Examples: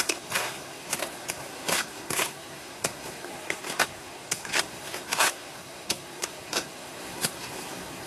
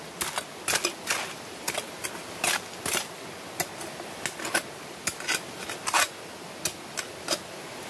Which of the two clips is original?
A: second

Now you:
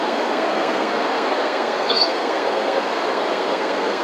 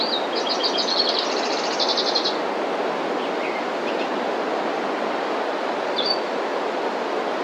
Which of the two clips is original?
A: second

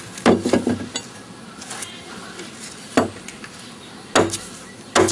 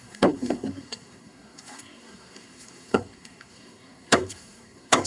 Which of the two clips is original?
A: first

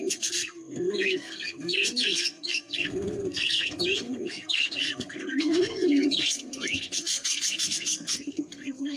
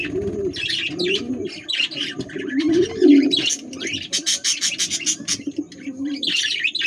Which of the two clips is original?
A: second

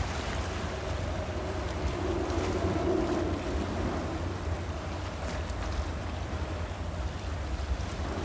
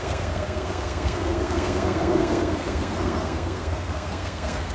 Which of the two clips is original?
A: first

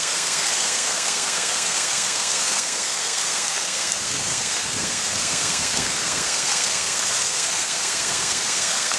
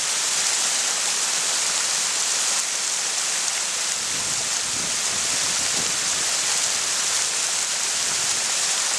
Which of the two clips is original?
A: second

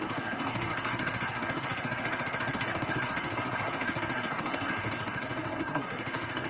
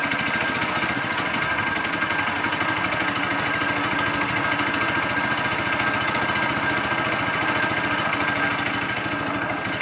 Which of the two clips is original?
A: second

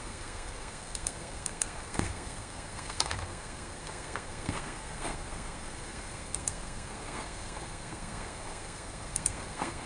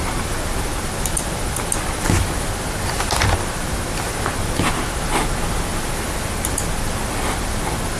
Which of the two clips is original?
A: second